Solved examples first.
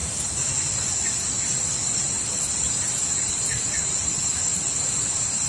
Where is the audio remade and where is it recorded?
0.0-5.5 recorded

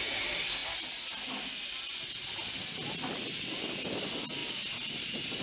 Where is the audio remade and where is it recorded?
0.0-5.4 recorded

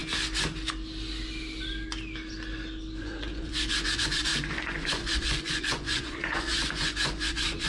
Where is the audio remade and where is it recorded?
0.0-3.0 recorded; 3.0-7.7 remade

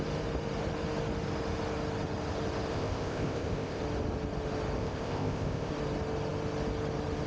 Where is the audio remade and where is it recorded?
0.0-2.7 recorded; 2.7-3.8 remade; 3.8-4.8 recorded; 4.8-5.7 remade; 5.7-7.3 recorded

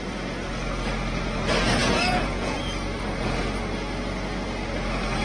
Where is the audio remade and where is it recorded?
0.0-1.8 recorded; 1.8-2.6 remade; 2.6-5.2 recorded

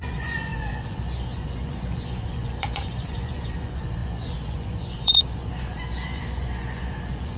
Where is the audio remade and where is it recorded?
0.0-7.4 remade